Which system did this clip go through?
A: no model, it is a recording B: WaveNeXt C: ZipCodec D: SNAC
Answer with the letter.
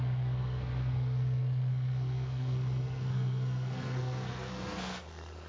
D